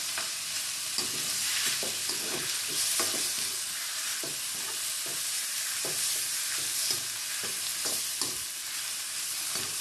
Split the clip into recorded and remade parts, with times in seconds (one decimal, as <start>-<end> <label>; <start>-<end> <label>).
0.0-2.0 recorded; 2.0-2.7 remade; 2.7-9.8 recorded